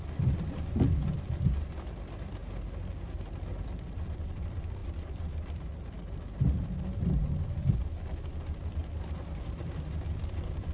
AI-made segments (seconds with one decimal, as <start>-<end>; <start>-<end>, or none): 0.0-2.4; 3.5-7.2; 8.3-8.8; 9.4-10.7

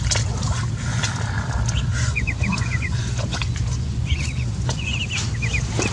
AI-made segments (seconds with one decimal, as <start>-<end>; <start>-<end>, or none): 1.9-5.0